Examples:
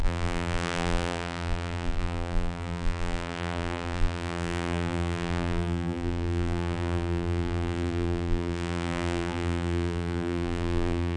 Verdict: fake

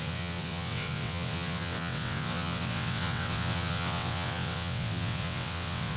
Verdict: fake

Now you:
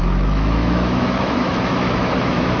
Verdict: fake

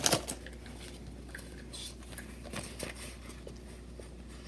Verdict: real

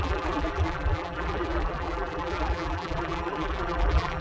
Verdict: fake